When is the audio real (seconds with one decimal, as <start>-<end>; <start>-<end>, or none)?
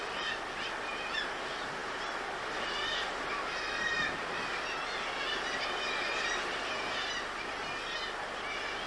0.0-8.9